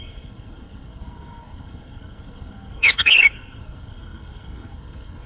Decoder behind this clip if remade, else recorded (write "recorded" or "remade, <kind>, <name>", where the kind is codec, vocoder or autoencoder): remade, codec, SNAC